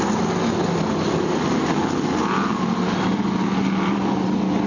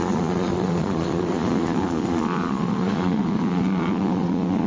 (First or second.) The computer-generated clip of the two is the second